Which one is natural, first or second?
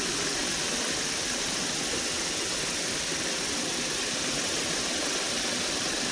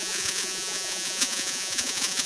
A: first